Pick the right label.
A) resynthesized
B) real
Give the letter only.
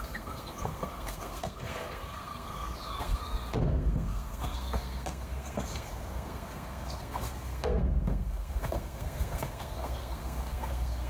A